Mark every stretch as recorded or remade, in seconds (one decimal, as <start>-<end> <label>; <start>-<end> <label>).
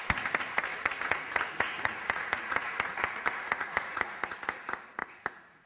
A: 0.0-0.7 recorded; 0.7-4.1 remade; 4.1-5.0 recorded; 5.0-5.7 remade